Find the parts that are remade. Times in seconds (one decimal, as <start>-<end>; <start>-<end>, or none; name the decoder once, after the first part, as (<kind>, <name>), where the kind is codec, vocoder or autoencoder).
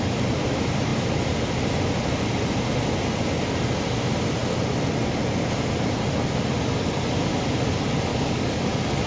8.1-8.7 (codec, DAC)